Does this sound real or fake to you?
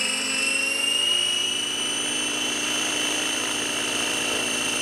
fake